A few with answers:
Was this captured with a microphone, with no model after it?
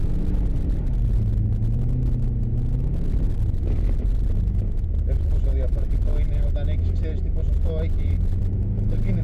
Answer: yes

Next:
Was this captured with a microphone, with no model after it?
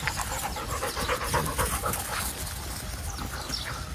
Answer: yes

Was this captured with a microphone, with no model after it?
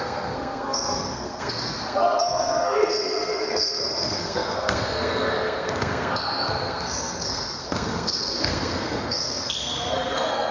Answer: no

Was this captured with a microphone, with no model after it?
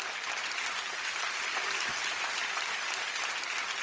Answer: yes